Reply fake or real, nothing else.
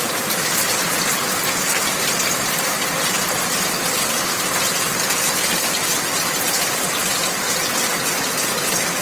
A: real